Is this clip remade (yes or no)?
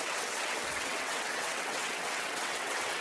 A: yes